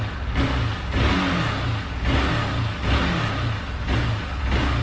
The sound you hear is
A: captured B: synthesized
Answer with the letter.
A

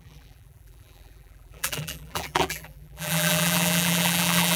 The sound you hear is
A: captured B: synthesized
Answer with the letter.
B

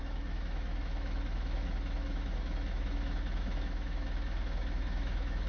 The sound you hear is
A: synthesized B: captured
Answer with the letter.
A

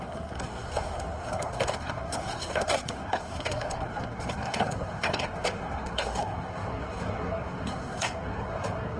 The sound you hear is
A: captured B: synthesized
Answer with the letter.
B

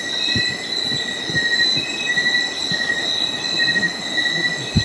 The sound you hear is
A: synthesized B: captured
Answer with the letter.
B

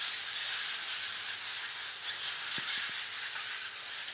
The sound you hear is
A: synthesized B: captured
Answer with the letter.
B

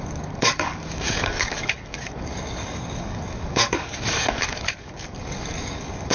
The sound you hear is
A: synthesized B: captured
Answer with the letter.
A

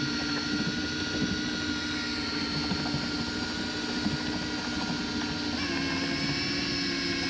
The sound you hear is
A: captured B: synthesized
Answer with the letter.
A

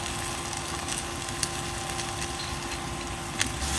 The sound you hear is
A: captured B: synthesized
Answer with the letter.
A